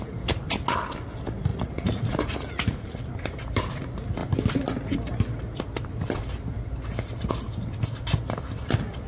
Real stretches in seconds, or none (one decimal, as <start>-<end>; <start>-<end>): 0.0-1.5; 3.0-9.1